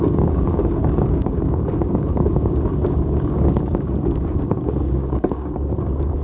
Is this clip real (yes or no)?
no